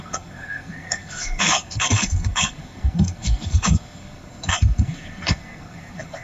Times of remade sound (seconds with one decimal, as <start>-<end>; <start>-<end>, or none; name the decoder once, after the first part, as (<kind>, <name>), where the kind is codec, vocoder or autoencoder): 0.0-6.2 (codec, SNAC)